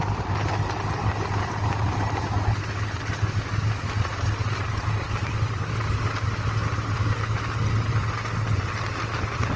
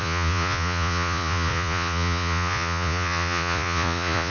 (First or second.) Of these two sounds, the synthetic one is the second